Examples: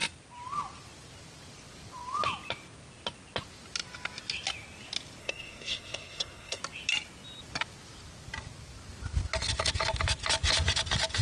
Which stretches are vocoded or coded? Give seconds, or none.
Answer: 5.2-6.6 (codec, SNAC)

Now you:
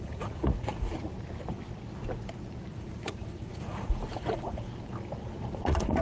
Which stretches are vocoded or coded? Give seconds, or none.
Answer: 0.0-0.9 (vocoder, Vocos); 2.7-4.7; 5.5-6.0

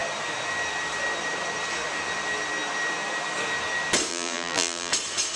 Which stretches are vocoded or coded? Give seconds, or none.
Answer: 4.1-4.9 (vocoder, BigVGAN v2)

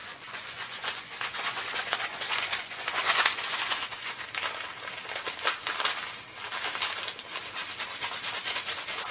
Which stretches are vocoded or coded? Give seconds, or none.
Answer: 0.0-4.2 (vocoder, Vocos)

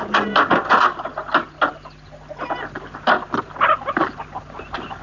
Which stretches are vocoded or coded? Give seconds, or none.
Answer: none

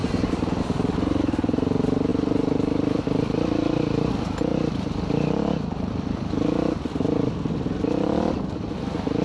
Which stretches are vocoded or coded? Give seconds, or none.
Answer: 2.1-4.1 (vocoder, BigVGAN v2); 4.5-7.6